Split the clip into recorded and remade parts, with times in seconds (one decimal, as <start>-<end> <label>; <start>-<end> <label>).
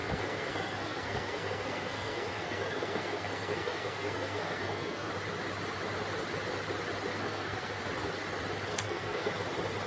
0.0-5.1 remade; 5.1-7.1 recorded; 7.1-7.8 remade; 7.8-8.7 recorded; 8.7-9.3 remade; 9.3-9.9 recorded